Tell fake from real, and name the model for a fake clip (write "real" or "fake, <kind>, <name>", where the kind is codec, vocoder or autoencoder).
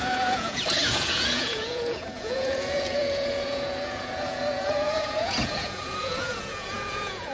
fake, vocoder, Vocos